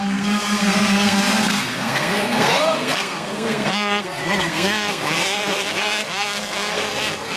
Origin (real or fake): fake